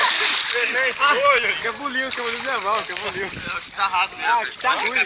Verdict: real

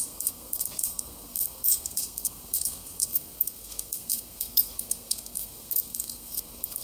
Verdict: fake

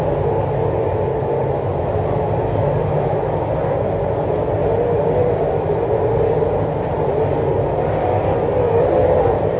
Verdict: real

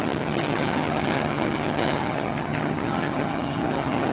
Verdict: fake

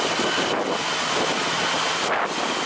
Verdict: real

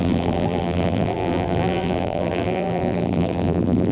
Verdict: fake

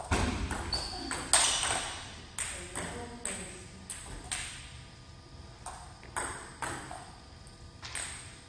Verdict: real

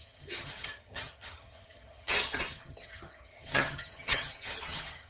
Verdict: fake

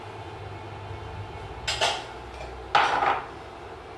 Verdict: real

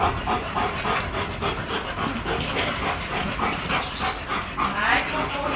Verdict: real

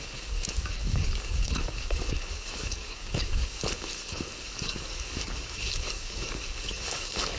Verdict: fake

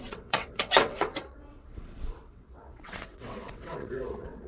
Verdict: fake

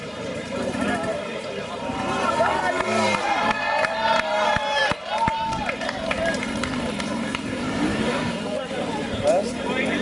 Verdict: fake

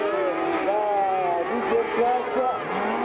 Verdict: real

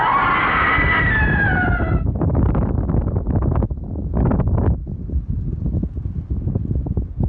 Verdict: real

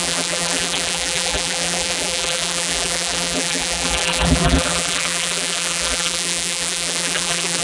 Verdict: fake